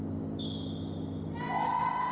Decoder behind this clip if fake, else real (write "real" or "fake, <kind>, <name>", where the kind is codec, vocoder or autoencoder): real